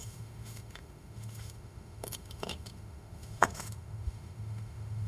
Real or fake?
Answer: fake